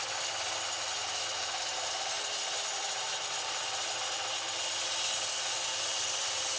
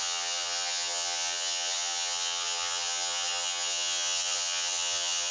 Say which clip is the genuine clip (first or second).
first